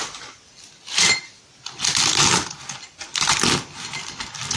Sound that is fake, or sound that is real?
real